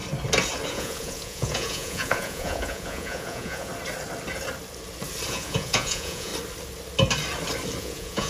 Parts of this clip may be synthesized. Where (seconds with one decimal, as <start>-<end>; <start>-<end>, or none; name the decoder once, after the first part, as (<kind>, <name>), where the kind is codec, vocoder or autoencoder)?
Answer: 0.7-3.7 (vocoder, Vocos); 5.3-6.3; 7.8-8.3